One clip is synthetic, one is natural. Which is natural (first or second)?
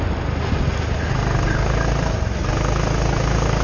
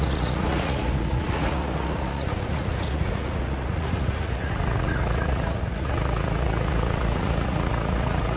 first